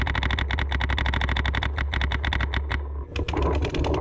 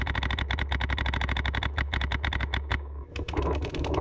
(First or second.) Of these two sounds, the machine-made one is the second